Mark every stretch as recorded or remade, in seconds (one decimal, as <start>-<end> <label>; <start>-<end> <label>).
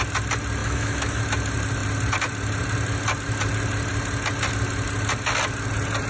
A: 0.0-0.6 recorded; 0.6-1.2 remade; 1.2-6.1 recorded